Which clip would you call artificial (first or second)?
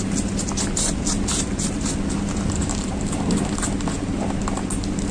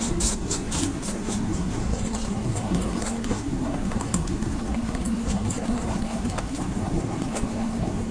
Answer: second